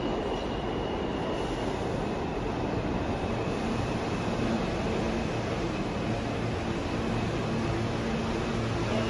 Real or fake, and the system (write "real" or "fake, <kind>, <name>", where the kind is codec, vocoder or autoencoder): real